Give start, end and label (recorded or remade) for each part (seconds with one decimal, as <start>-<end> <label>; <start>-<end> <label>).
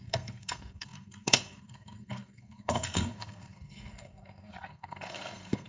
0.0-5.7 remade